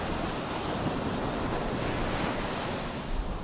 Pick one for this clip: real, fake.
real